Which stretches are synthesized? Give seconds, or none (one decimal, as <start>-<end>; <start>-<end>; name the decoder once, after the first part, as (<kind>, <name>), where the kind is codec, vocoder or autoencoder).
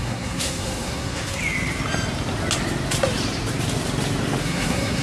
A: 0.0-1.4 (codec, SNAC); 4.4-5.0